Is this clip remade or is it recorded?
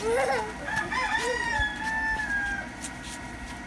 recorded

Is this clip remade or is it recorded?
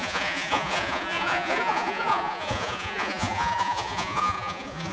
remade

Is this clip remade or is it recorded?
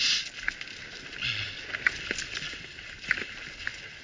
recorded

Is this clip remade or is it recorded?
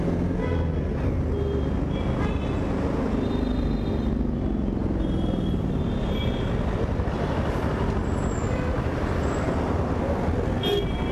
recorded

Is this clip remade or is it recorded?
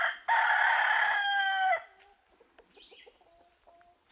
recorded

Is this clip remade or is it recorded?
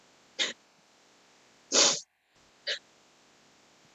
recorded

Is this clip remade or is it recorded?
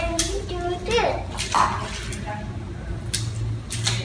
recorded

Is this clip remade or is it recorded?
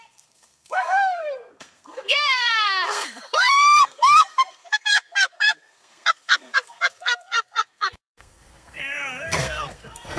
remade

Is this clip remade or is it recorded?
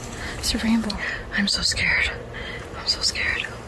remade